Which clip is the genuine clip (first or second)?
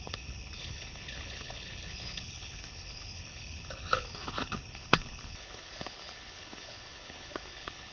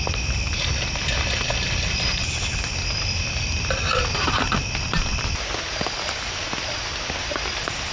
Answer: second